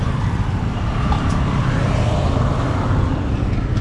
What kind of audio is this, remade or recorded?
recorded